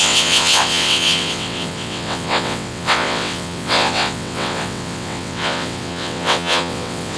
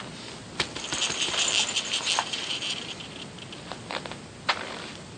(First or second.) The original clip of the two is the second